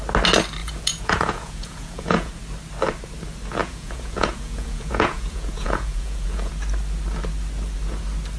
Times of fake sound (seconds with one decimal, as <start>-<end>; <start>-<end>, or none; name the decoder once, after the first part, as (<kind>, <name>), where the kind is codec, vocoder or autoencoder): 0.6-2.3 (vocoder, Vocos); 3.6-6.5